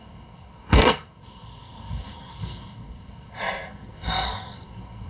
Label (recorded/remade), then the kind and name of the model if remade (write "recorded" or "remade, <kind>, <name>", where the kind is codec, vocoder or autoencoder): remade, codec, SNAC